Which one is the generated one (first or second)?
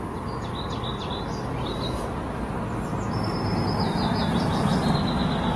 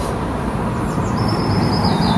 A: second